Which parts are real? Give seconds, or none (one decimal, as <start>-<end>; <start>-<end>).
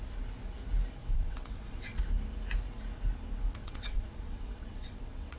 0.0-1.0; 2.0-3.6